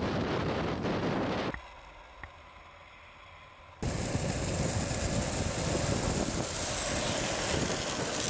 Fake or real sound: real